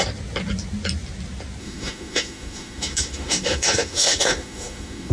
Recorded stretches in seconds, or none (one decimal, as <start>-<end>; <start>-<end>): 0.0-1.6